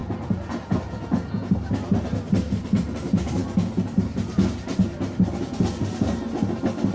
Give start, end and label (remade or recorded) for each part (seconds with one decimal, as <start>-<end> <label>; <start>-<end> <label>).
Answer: 0.0-1.5 remade; 1.5-6.9 recorded